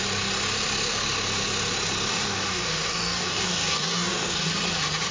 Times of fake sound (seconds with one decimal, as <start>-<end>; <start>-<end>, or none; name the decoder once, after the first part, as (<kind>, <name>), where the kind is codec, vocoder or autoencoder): 2.1-4.5 (codec, DAC)